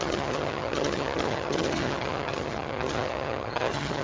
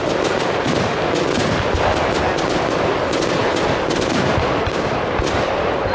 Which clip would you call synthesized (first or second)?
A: first